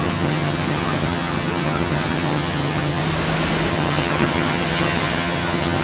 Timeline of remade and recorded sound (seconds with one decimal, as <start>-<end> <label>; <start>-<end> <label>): 0.0-3.0 remade; 3.0-3.7 recorded; 3.7-5.8 remade